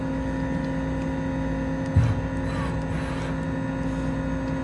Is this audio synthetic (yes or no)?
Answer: no